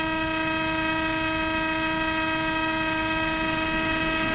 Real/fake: real